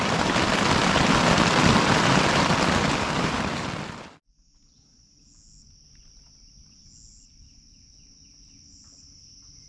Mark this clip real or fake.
real